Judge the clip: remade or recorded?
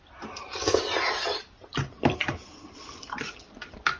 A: recorded